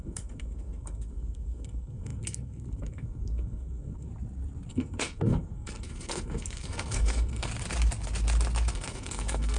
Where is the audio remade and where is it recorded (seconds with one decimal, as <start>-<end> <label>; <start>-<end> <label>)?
0.0-4.1 remade; 4.1-4.7 recorded; 4.7-7.5 remade; 7.5-8.7 recorded; 8.7-9.6 remade